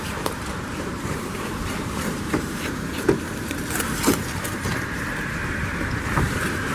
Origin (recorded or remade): remade